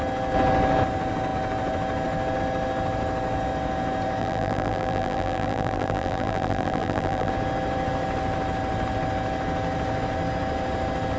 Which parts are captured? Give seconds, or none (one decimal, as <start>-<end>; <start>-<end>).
0.0-4.2; 7.3-11.2